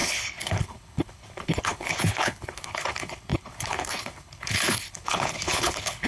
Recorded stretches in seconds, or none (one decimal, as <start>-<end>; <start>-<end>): none